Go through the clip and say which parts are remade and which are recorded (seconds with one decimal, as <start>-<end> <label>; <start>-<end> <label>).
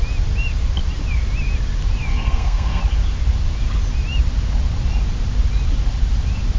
0.0-2.1 recorded; 2.1-2.8 remade; 2.8-6.6 recorded